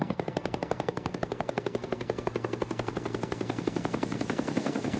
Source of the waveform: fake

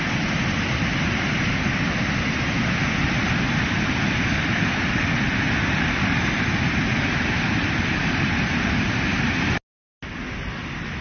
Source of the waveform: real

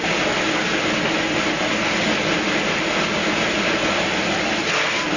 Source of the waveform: real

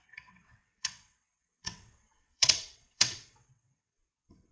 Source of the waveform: fake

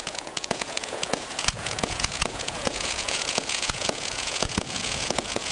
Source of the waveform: fake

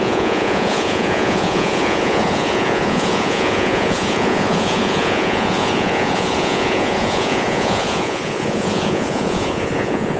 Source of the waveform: fake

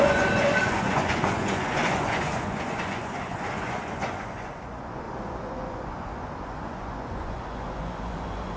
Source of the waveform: fake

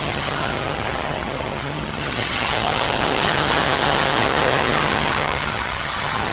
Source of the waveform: fake